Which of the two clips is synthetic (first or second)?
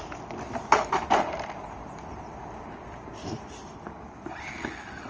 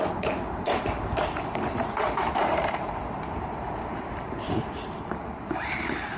second